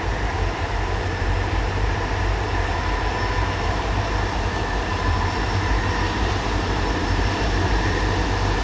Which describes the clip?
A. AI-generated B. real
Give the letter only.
A